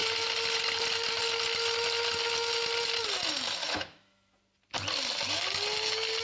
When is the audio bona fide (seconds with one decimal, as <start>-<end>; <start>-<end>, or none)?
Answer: 0.0-3.6; 4.4-6.2